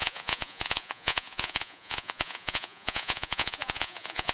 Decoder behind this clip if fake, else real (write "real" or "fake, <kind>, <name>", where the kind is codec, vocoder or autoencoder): fake, vocoder, Vocos